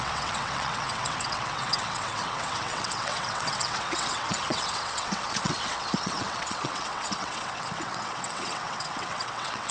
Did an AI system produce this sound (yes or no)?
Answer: yes